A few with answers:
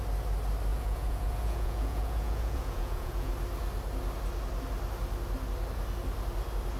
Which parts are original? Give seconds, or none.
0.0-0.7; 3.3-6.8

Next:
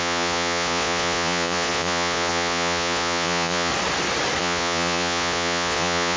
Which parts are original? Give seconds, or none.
3.7-4.4